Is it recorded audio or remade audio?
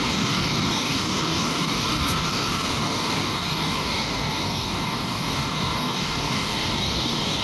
remade